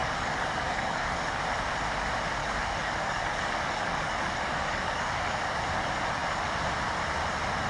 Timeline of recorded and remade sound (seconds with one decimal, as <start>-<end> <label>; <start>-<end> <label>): 0.0-1.4 remade; 1.4-2.4 recorded; 2.4-5.6 remade; 5.6-7.7 recorded